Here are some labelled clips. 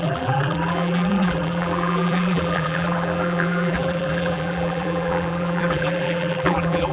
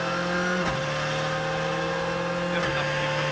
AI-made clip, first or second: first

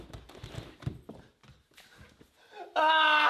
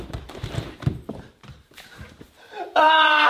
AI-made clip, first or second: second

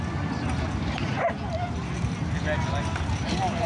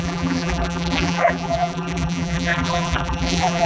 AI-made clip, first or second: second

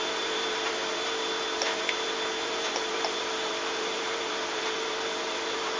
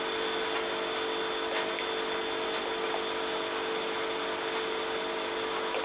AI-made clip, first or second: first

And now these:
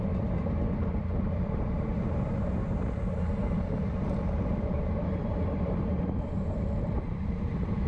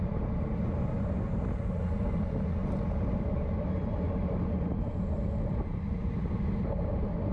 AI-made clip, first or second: first